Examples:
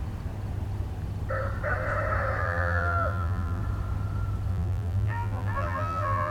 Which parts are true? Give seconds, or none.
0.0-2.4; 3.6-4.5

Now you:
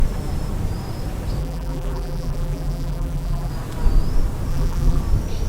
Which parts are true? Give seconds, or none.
0.0-1.4; 3.5-4.5; 5.0-5.5

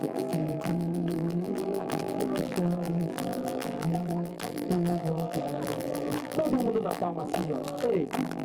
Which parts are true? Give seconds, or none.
none

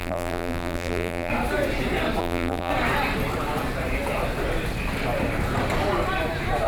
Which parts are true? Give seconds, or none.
1.3-2.2; 2.7-6.7

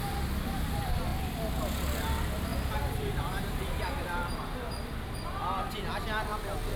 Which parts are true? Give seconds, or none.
0.0-6.8

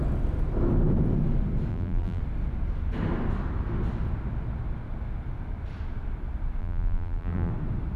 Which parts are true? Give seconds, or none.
0.0-1.7; 2.2-6.6; 7.5-8.0

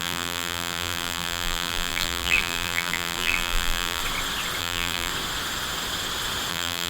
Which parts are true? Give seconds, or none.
4.0-4.6; 5.1-6.5

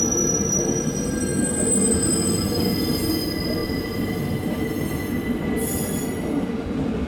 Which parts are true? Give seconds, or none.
0.0-7.1